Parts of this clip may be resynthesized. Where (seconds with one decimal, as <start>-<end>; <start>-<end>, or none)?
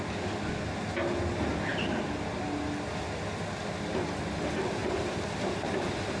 4.8-6.2